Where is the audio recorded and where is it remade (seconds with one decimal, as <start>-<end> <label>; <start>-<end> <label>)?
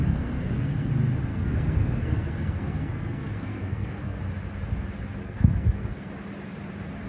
0.0-0.9 remade; 0.9-1.3 recorded; 1.3-4.2 remade; 4.2-5.2 recorded; 5.2-6.1 remade; 6.1-7.1 recorded